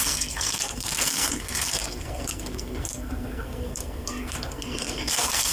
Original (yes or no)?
no